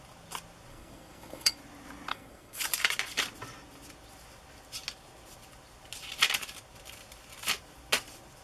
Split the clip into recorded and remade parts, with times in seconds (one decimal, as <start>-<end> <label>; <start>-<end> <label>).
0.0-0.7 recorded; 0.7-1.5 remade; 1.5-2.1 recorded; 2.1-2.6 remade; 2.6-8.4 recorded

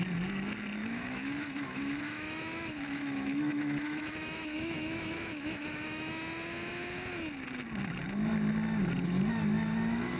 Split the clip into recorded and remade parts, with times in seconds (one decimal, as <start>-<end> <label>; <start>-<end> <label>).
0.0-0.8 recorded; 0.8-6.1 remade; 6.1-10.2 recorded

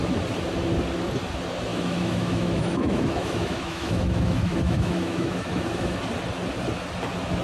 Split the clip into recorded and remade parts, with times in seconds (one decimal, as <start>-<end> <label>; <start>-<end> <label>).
0.0-1.7 recorded; 1.7-6.0 remade; 6.0-7.4 recorded

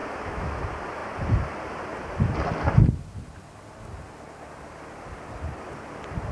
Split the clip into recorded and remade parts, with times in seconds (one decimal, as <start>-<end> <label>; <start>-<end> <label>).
0.0-0.6 remade; 0.6-6.3 recorded